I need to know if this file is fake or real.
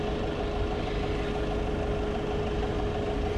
real